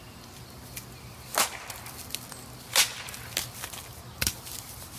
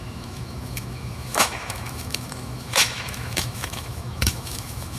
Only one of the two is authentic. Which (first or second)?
first